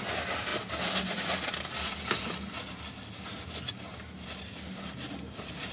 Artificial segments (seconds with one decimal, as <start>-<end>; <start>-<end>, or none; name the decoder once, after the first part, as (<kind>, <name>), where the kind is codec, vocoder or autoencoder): none